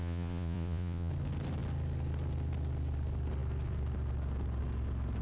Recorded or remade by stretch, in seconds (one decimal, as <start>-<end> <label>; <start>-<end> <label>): 0.0-1.1 remade; 1.1-5.2 recorded